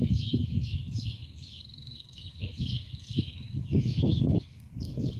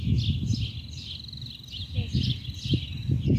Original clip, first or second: second